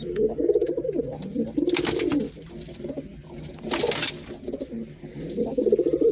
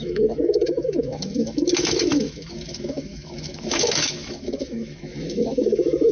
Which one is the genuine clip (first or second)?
first